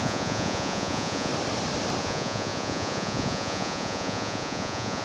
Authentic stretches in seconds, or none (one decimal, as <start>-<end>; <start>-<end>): 1.3-2.0